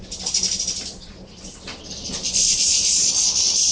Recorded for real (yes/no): yes